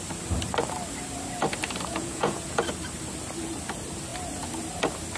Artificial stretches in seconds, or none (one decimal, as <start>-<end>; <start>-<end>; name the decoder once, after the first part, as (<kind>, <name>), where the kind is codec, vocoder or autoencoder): 1.9-2.6 (vocoder, Vocos)

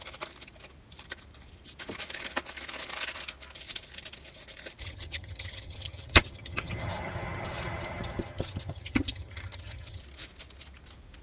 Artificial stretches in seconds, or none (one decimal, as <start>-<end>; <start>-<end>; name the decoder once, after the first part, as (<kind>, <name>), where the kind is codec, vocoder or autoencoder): 4.8-10.0 (vocoder, HiFi-GAN)

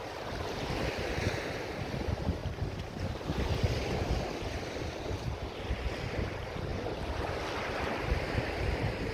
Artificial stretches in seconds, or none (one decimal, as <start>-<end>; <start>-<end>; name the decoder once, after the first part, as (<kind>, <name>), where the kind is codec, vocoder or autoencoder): none

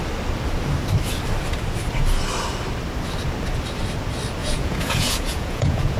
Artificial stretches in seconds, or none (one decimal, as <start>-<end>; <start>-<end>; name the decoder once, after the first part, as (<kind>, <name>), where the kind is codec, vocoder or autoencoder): 4.4-6.0 (vocoder, Vocos)

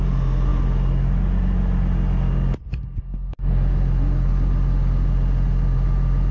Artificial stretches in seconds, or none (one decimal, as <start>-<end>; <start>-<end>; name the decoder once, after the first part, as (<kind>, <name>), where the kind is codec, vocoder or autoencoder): none

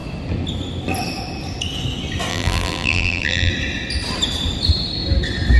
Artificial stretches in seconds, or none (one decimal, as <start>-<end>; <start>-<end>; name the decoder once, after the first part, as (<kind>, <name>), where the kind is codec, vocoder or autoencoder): 2.3-3.5 (vocoder, BigVGAN v2)

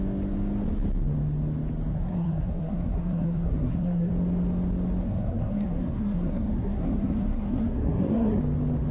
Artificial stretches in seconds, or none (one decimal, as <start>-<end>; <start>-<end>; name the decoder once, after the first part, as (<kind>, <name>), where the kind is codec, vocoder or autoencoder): 1.9-4.1 (codec, SNAC); 5.0-8.4